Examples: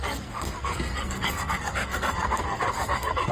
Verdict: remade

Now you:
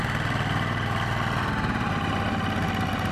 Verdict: recorded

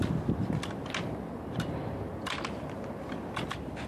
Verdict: recorded